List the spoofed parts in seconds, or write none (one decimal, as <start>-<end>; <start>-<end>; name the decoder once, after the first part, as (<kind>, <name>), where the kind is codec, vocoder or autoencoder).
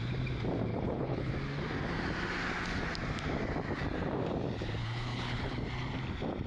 0.7-1.3 (codec, HILCodec); 4.8-5.6